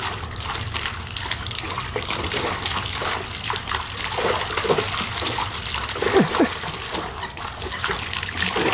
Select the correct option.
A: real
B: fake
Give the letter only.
A